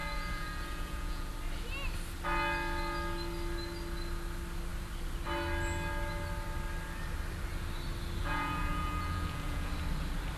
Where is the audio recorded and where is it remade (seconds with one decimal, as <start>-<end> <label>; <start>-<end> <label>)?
0.0-1.3 remade; 1.3-8.2 recorded; 8.2-9.7 remade; 9.7-10.4 recorded